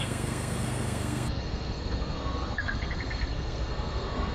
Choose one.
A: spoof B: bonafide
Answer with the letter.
A